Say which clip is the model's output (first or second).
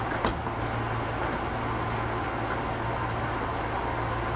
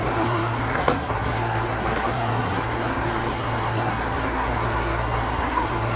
second